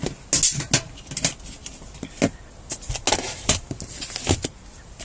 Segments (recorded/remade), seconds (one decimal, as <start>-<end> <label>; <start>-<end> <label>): 0.0-5.0 recorded